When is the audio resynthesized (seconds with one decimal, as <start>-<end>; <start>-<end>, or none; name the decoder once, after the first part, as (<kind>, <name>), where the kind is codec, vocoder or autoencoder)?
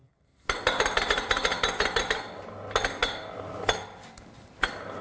none